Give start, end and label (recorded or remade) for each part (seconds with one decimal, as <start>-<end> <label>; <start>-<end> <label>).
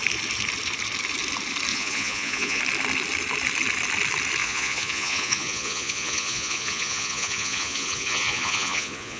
0.0-1.7 recorded; 1.7-2.6 remade; 2.6-4.4 recorded; 4.4-9.2 remade